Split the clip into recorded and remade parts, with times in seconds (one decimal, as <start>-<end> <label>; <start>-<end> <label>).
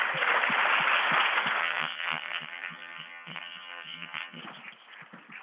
0.0-1.6 recorded; 1.6-4.4 remade; 4.4-5.4 recorded